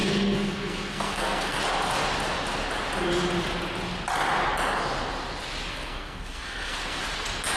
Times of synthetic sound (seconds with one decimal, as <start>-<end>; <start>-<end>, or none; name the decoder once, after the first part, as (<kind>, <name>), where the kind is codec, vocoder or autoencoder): 0.0-1.6 (codec, SNAC); 5.7-7.0